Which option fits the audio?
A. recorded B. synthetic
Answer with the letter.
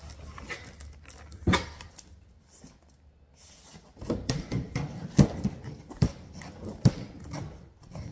A